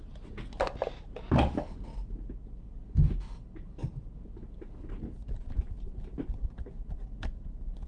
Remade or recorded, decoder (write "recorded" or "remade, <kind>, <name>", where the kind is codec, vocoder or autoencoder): recorded